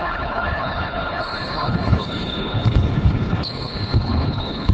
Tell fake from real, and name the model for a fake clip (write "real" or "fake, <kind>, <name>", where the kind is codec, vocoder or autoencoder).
fake, codec, HILCodec